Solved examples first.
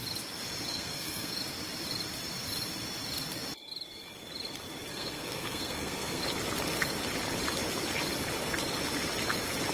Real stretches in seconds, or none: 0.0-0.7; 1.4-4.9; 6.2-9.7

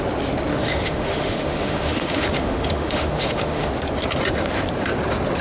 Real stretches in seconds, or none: 0.0-0.5; 3.7-5.4

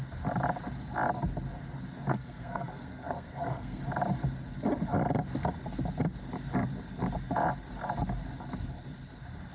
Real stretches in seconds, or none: 0.0-2.1; 3.8-9.5

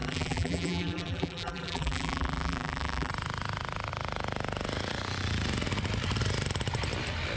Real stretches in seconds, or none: 3.1-7.4